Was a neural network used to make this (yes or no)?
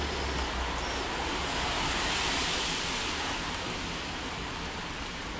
no